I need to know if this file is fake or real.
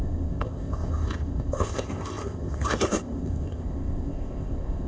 fake